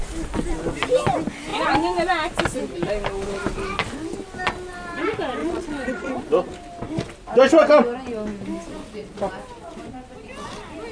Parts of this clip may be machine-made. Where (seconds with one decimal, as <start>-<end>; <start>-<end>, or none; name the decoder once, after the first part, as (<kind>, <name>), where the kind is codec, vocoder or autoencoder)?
5.4-6.1 (vocoder, Vocos)